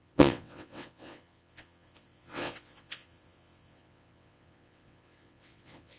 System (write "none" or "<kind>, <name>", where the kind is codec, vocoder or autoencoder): vocoder, WaveNeXt